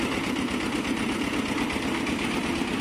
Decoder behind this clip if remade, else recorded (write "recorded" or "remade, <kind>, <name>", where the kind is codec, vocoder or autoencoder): recorded